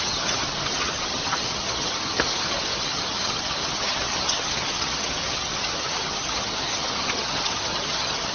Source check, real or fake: fake